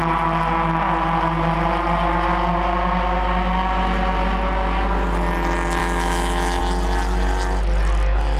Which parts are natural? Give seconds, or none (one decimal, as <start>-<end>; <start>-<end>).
0.0-5.8; 6.6-8.4